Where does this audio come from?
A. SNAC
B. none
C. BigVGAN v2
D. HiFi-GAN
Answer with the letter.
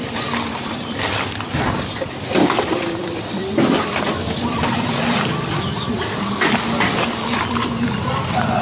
C